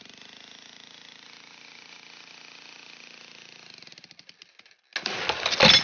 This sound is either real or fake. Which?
real